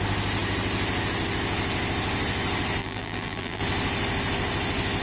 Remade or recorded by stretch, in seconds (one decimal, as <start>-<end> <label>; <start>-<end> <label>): 0.0-2.8 recorded; 2.8-3.6 remade; 3.6-5.0 recorded